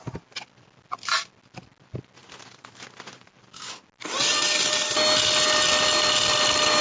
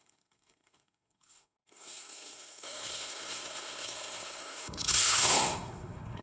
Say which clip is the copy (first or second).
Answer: second